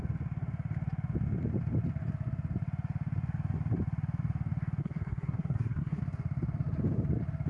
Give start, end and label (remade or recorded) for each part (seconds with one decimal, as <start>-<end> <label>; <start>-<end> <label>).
0.0-4.8 recorded; 4.8-6.0 remade; 6.0-7.5 recorded